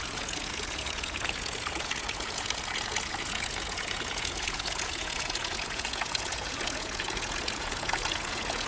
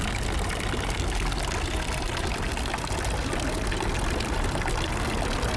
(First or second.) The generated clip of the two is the first